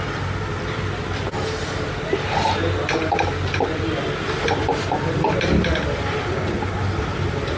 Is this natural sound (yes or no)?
yes